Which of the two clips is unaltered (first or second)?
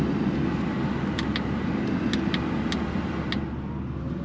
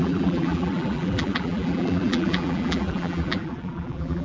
first